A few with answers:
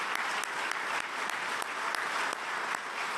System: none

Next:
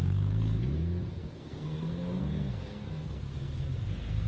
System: codec, SNAC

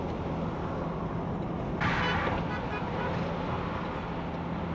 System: none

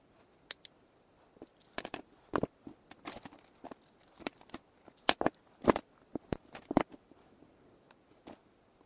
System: none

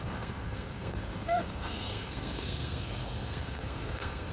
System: codec, SNAC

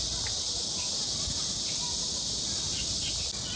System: none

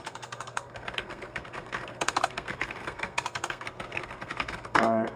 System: codec, SNAC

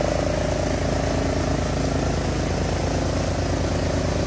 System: none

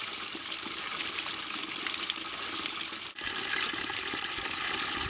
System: none